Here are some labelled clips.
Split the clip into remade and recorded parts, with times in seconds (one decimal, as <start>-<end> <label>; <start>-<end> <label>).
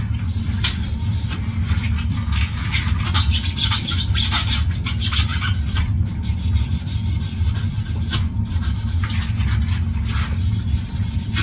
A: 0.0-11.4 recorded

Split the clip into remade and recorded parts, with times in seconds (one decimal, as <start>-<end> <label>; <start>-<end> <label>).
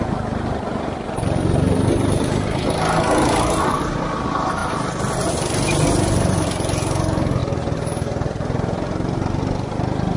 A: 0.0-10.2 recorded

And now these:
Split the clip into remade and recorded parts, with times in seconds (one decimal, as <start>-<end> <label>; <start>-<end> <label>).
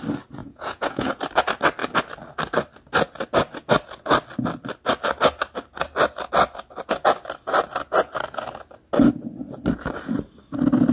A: 0.0-0.4 recorded; 0.4-1.2 remade; 1.2-10.9 recorded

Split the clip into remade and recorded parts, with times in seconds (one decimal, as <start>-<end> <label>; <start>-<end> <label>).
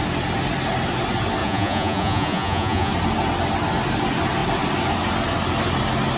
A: 0.0-1.4 recorded; 1.4-2.9 remade; 2.9-6.2 recorded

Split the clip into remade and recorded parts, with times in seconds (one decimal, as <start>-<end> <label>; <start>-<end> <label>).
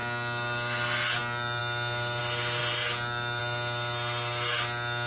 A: 0.0-5.1 recorded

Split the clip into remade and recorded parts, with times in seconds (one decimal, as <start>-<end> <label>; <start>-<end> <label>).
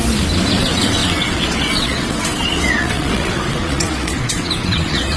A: 0.0-0.6 recorded; 0.6-5.2 remade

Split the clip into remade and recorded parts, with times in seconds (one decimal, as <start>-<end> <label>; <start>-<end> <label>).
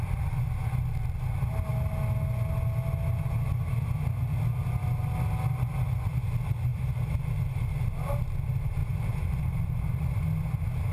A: 0.0-6.7 recorded; 6.7-7.2 remade; 7.2-10.9 recorded